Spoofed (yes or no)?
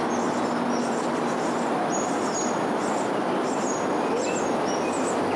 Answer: no